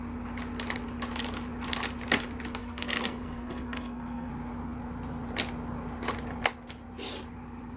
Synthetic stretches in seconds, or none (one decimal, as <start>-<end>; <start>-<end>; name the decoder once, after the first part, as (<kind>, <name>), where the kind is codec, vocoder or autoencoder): 2.6-4.3 (codec, SNAC)